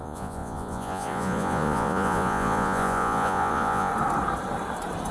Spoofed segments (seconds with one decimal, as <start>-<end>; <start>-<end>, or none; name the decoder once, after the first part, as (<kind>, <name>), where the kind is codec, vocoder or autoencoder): 0.0-3.9 (vocoder, Vocos)